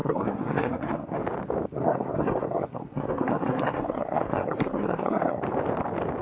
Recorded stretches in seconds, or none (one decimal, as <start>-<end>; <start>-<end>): 1.2-1.7; 5.4-6.2